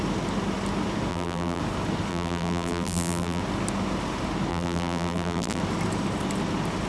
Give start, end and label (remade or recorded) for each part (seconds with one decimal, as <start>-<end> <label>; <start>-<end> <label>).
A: 0.0-1.1 recorded; 1.1-1.6 remade; 1.6-2.1 recorded; 2.1-3.4 remade; 3.4-4.5 recorded; 4.5-5.6 remade; 5.6-6.9 recorded